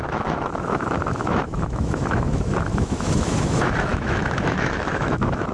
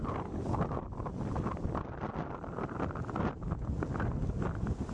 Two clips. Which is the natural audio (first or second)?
second